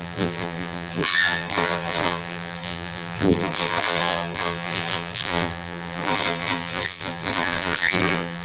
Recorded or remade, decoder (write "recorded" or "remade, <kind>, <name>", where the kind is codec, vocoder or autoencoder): remade, vocoder, BigVGAN v2